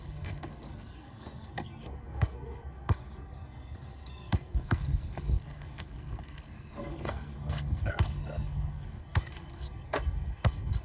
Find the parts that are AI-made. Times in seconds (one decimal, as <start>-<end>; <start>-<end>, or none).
0.0-10.8